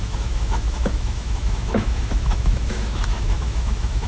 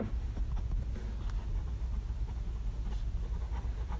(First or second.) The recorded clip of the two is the second